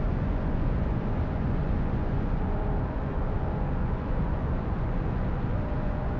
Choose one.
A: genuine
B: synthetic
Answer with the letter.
B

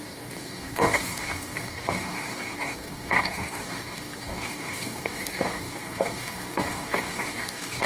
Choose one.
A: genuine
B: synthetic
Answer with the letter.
B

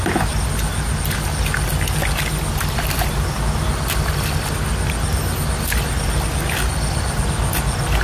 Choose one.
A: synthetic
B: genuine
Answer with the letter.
B